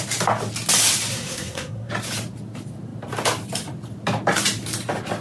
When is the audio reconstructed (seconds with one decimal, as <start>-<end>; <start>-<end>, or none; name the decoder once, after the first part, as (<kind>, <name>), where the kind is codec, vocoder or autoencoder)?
1.1-1.9 (codec, SNAC)